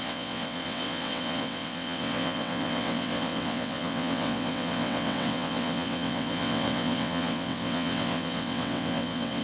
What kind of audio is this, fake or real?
fake